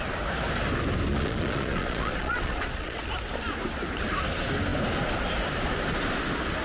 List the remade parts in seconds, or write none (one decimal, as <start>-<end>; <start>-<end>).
1.1-3.0